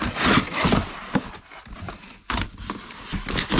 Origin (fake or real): real